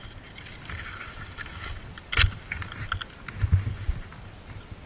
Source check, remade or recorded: recorded